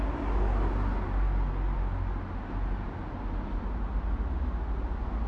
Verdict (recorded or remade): recorded